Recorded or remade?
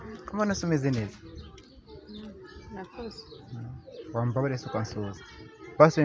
recorded